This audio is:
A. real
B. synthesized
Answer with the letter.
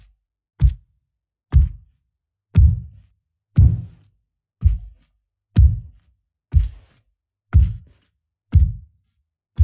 A